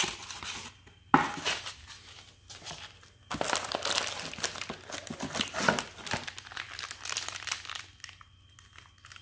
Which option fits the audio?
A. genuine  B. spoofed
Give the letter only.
A